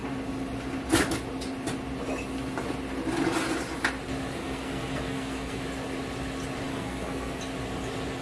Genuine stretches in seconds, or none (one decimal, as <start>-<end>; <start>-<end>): 0.0-4.4; 5.6-6.7; 7.4-8.2